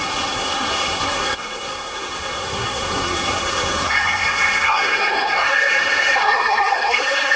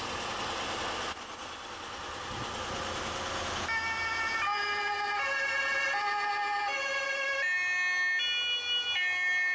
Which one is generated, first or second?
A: first